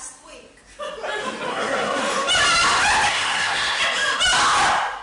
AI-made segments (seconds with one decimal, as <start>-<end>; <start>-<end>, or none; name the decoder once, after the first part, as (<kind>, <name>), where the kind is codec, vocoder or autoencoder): 1.5-2.0 (codec, SNAC); 3.1-3.8